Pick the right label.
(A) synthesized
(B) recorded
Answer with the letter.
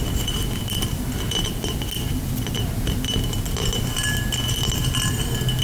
B